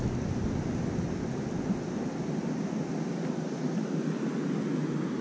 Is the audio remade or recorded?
recorded